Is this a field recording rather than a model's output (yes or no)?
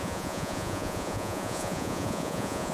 no